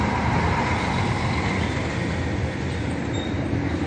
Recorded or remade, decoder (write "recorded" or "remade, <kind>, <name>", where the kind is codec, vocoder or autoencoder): recorded